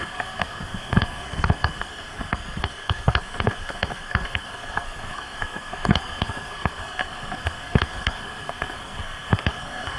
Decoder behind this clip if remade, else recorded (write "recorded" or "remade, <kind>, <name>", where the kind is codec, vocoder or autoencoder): remade, codec, SNAC